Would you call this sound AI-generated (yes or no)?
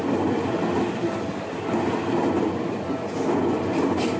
no